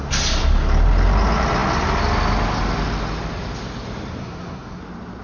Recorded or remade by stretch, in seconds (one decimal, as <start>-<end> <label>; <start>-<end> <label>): 0.0-4.2 recorded; 4.2-4.8 remade; 4.8-5.2 recorded